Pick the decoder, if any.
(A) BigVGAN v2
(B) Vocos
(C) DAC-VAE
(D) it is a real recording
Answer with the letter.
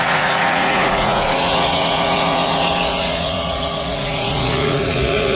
B